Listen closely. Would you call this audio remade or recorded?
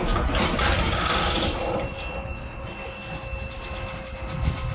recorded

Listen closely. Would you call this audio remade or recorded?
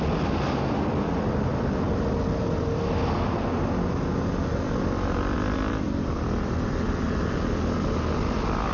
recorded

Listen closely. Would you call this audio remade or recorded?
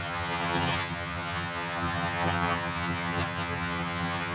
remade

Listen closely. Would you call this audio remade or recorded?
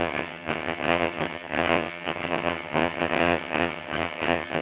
remade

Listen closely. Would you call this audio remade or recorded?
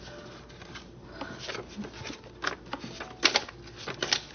recorded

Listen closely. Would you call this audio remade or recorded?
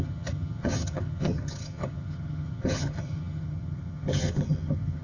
remade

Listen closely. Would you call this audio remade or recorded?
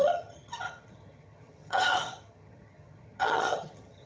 remade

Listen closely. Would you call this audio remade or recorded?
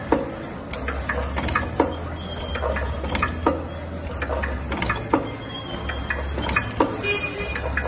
recorded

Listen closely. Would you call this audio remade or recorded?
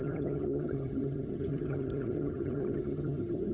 remade